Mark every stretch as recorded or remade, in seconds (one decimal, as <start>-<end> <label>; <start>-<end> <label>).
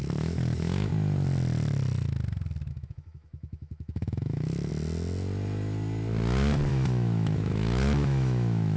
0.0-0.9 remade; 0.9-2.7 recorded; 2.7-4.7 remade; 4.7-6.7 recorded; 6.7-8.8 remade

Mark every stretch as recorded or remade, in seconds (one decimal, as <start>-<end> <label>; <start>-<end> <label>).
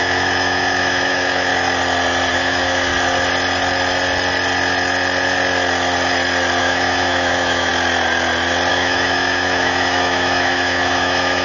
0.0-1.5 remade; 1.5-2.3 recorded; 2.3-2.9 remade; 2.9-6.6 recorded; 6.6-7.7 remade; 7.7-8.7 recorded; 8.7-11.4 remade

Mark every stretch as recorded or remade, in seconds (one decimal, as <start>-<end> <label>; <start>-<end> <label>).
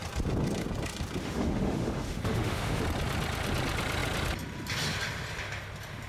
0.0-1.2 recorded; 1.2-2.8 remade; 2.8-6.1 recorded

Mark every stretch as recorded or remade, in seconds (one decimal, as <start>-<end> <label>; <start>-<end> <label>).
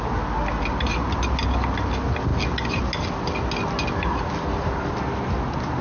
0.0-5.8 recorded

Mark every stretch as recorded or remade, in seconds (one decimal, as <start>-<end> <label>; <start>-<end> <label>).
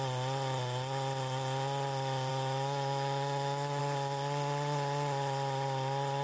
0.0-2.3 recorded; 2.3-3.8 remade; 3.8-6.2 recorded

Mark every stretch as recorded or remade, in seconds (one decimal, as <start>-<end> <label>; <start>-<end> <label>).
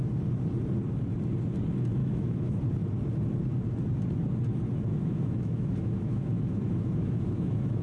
0.0-2.0 recorded; 2.0-2.6 remade; 2.6-4.9 recorded; 4.9-7.8 remade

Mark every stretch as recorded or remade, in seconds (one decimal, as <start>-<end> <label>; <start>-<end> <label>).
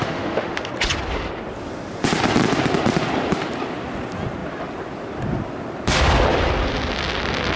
0.0-0.7 remade; 0.7-7.6 recorded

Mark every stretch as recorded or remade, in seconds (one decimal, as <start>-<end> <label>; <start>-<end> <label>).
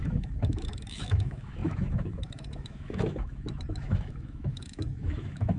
0.0-5.6 remade